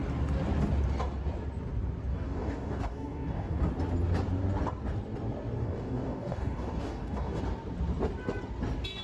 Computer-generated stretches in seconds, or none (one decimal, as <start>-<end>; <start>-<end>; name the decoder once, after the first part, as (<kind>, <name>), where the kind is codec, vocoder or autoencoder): 2.1-3.7 (codec, DAC); 5.6-7.4